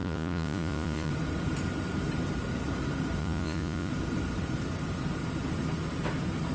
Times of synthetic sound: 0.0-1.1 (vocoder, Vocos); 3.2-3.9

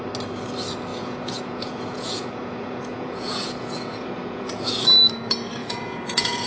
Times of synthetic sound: 0.9-4.8 (vocoder, Vocos); 5.6-6.5

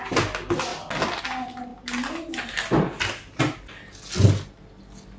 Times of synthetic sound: none

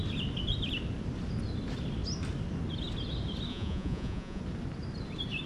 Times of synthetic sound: 3.5-4.4 (vocoder, Vocos)